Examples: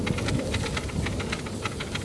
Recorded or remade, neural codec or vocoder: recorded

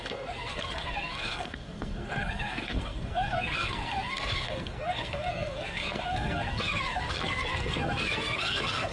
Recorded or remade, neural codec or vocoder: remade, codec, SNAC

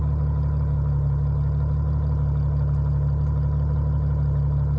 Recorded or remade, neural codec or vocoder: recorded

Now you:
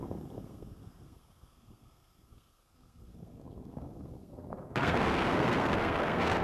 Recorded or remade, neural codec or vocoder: remade, codec, SNAC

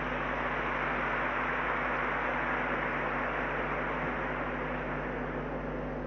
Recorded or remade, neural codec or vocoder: recorded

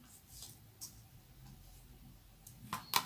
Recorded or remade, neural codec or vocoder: recorded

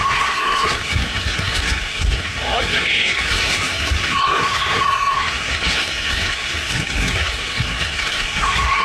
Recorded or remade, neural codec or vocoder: remade, codec, SNAC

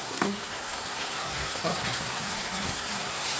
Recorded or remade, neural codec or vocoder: remade, codec, SNAC